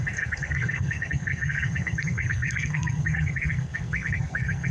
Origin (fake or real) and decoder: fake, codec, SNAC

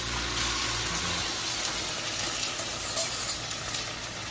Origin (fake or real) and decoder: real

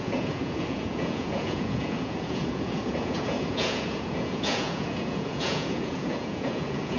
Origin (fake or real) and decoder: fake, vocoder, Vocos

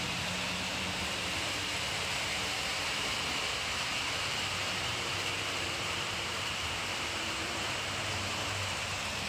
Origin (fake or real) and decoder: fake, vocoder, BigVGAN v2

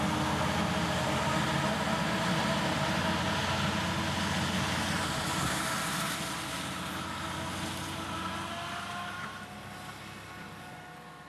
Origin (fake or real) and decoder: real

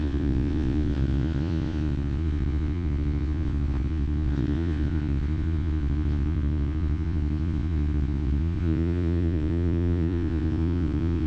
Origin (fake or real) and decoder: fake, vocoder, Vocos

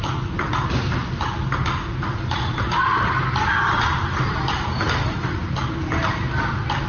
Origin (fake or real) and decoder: real